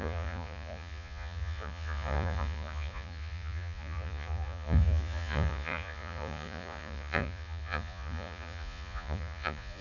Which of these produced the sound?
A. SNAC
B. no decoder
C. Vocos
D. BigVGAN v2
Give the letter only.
C